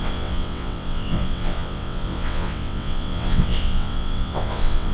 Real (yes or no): no